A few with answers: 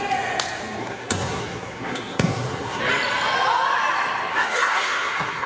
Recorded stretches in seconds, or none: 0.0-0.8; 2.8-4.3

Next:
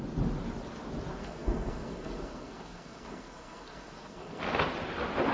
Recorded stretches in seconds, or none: 0.0-1.2; 4.4-5.3

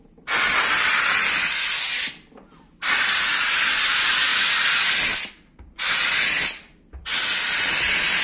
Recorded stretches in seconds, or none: 0.0-8.2

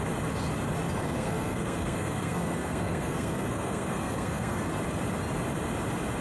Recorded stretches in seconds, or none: 0.0-1.0; 4.7-6.2

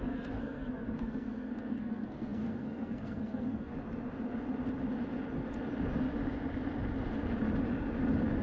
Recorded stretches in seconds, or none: 3.7-8.4

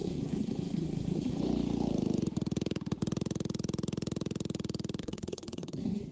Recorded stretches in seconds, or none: 1.4-5.0